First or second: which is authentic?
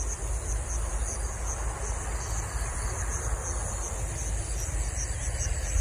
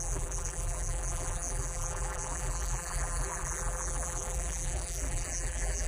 first